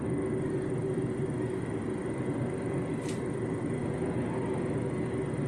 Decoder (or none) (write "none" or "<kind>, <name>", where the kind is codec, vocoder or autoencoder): none